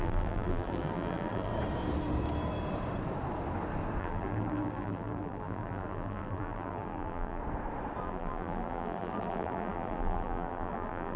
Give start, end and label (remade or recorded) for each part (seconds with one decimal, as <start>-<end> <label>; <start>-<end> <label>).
0.0-1.5 remade; 1.5-4.0 recorded; 4.0-7.4 remade; 7.4-8.0 recorded; 8.0-11.2 remade